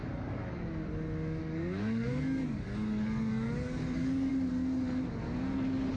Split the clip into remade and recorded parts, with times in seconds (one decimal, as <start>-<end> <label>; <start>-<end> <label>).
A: 0.0-0.7 remade; 0.7-1.4 recorded; 1.4-4.3 remade; 4.3-6.0 recorded